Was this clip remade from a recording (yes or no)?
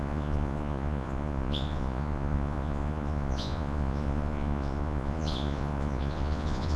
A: yes